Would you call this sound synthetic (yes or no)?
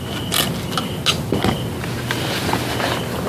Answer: no